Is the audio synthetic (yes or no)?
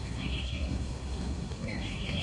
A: yes